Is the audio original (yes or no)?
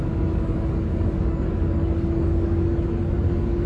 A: no